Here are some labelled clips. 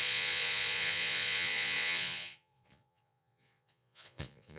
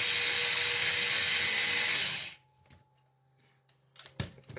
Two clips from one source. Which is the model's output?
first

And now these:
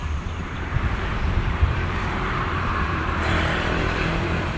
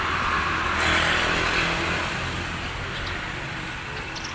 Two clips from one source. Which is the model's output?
first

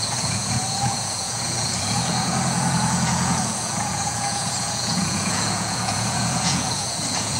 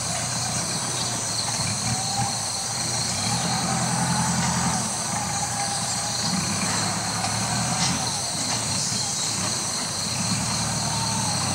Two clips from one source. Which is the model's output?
first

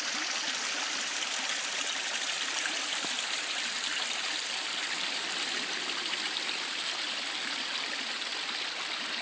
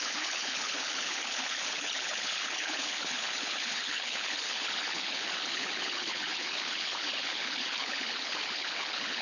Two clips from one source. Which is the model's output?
second